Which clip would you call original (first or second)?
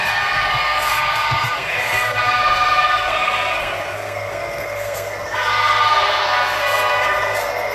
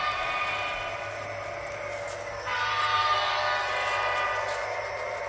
second